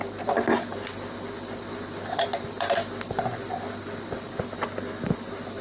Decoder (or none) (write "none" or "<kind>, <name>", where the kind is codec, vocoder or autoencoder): none